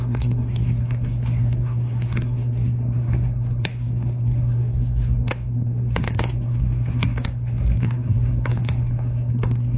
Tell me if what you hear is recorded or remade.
remade